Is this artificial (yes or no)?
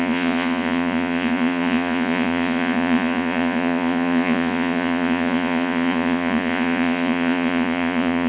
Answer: yes